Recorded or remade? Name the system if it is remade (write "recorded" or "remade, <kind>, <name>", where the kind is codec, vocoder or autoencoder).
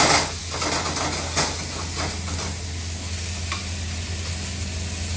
recorded